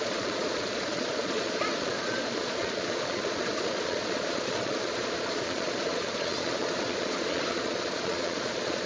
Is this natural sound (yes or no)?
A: no